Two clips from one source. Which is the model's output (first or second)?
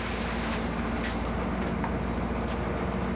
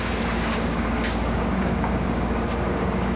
second